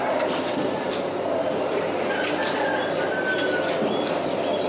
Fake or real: real